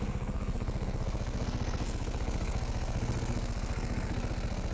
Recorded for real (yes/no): no